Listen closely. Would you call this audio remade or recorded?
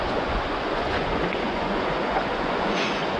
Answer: remade